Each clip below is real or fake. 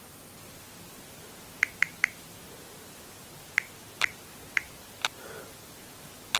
real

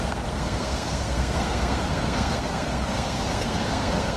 fake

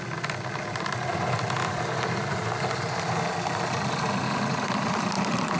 real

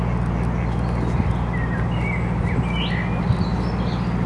real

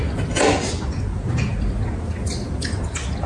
real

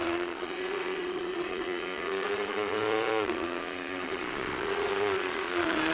fake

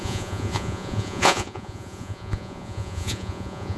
fake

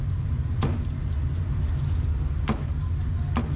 real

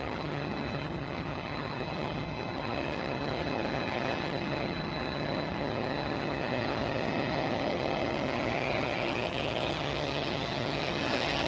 fake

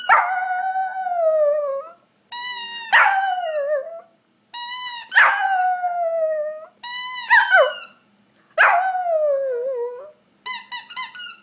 real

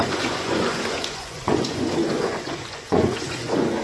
fake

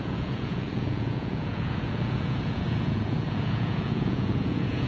fake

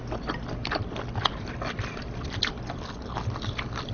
real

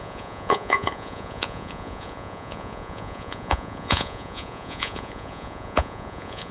fake